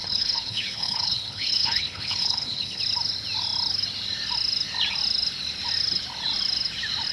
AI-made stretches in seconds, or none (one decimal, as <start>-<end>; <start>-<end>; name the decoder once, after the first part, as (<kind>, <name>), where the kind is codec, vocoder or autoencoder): 0.0-2.8 (codec, HILCodec)